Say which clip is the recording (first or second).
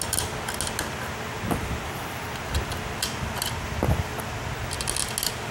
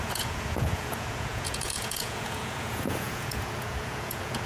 first